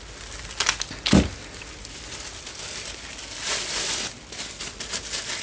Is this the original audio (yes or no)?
yes